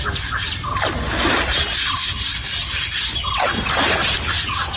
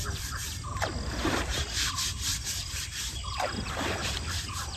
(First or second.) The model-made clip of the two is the second